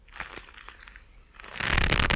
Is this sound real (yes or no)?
yes